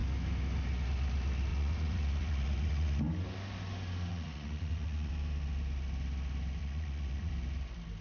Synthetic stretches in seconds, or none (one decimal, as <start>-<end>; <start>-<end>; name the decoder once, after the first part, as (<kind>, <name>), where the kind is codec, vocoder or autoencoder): 1.5-3.0 (vocoder, Vocos); 4.1-5.1; 6.6-7.3